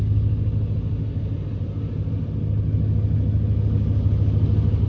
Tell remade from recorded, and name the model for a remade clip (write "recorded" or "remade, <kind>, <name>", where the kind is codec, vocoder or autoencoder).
recorded